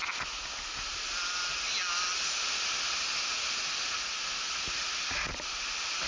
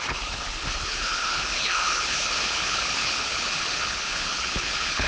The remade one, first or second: second